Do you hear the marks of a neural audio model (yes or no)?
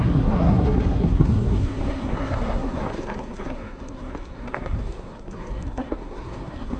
yes